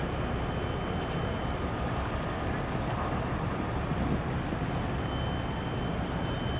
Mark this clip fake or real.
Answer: real